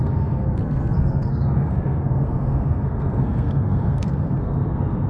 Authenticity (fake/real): fake